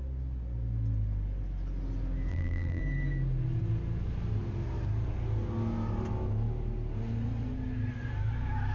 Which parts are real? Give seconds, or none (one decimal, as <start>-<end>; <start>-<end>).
0.0-2.3; 2.8-8.7